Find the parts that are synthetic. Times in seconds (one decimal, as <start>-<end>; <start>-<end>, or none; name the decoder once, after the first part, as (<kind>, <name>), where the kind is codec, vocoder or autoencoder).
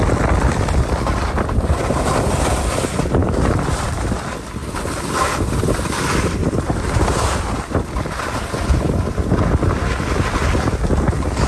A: 3.2-4.0 (vocoder, BigVGAN v2); 6.4-7.3